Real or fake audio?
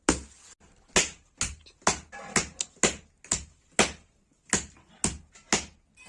real